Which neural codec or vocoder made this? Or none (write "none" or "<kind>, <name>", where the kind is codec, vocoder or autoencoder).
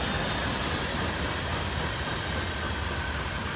none